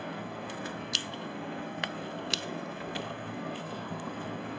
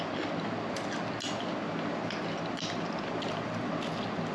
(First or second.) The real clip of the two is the second